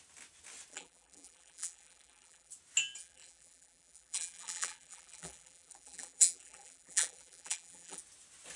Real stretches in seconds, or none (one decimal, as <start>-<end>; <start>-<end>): 0.0-0.7; 2.5-3.0; 8.0-8.6